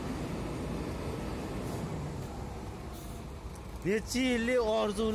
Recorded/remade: recorded